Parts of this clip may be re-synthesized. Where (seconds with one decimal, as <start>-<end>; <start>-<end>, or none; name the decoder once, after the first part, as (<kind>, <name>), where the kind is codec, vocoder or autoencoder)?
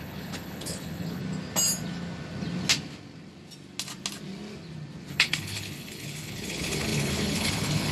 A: 0.0-1.2 (codec, HILCodec); 5.1-7.9